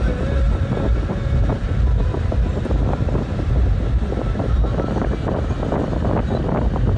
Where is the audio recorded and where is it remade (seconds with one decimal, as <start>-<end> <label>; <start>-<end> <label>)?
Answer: 0.0-7.0 recorded